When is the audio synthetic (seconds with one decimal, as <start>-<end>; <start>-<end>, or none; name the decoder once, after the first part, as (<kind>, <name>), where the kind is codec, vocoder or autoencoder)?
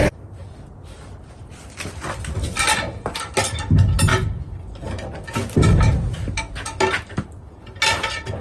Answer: none